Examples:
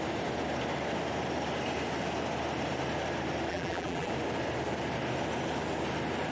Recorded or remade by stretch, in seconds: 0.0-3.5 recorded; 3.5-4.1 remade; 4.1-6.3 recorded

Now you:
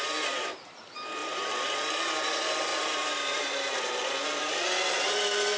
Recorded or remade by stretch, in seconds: 0.0-1.2 recorded; 1.2-1.7 remade; 1.7-2.7 recorded; 2.7-4.4 remade; 4.4-5.6 recorded

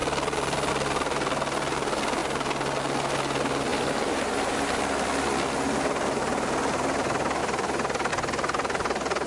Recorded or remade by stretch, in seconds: 0.0-3.7 recorded; 3.7-4.8 remade; 4.8-7.4 recorded; 7.4-8.1 remade; 8.1-9.3 recorded